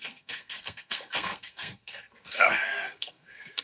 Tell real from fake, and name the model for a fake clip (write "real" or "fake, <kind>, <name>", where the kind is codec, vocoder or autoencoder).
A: fake, codec, SNAC